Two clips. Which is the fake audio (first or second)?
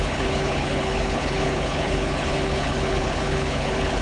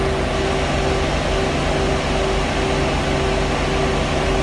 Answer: first